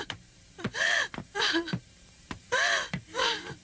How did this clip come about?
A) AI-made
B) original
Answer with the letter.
A